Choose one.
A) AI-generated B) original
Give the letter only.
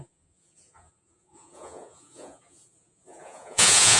A